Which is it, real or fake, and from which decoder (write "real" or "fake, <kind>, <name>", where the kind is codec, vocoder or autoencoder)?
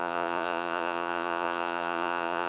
fake, vocoder, Vocos